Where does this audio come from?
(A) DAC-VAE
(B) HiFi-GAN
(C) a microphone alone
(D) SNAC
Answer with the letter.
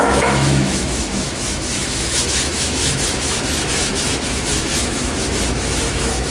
A